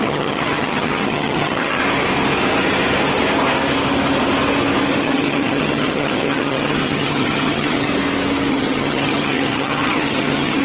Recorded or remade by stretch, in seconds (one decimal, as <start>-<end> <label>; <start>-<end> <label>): 0.0-1.8 remade; 1.8-5.0 recorded; 5.0-7.9 remade; 7.9-8.5 recorded; 8.5-10.6 remade